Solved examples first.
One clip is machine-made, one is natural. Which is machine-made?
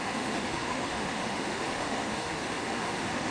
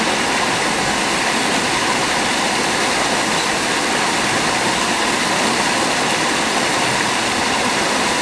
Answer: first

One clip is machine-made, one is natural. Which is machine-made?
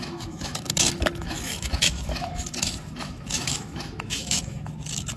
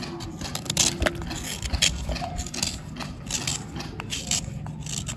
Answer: first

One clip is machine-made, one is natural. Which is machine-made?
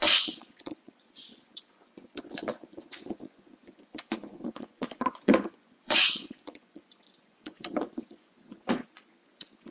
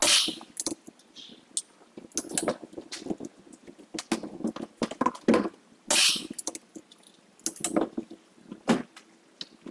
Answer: first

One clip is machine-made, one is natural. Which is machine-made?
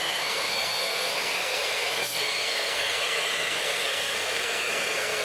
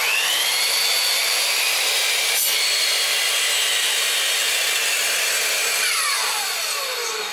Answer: first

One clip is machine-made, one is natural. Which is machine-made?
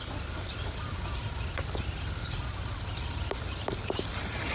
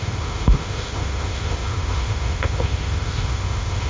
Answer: second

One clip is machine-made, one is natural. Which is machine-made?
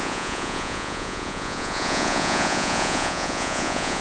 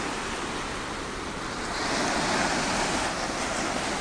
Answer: first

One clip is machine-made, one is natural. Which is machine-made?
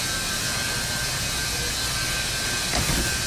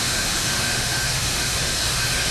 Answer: second